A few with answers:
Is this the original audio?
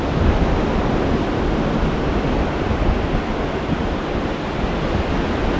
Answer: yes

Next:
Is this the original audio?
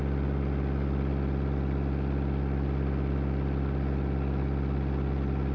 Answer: yes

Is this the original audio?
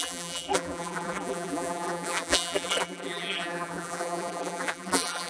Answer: no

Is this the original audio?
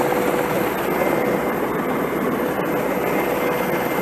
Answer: yes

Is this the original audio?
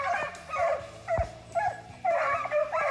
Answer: no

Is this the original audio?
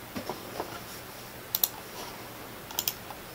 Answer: yes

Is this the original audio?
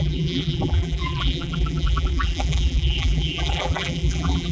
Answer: no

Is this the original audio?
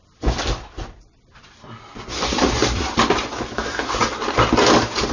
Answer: yes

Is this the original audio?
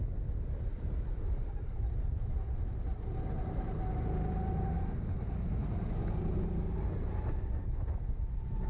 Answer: yes